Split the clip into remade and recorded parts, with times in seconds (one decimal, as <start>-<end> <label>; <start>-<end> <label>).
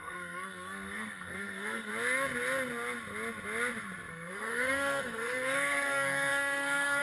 0.0-1.9 remade; 1.9-4.1 recorded; 4.1-7.0 remade